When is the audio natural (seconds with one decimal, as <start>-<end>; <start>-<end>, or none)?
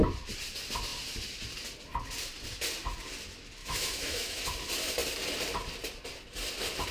0.0-3.6; 4.4-6.9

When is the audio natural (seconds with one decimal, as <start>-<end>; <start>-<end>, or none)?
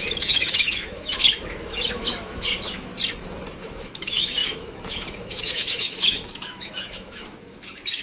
2.9-3.6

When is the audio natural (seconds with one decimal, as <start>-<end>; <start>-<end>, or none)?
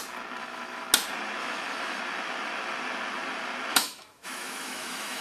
0.0-0.4; 0.9-1.4; 2.0-3.7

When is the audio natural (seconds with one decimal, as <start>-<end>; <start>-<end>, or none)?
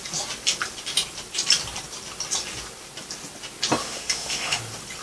0.0-3.8; 4.6-5.0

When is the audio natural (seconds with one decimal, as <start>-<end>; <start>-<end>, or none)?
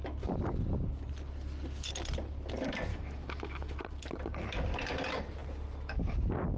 0.0-2.9; 3.8-6.6